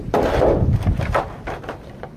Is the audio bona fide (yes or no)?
yes